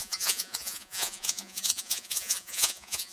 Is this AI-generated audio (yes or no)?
yes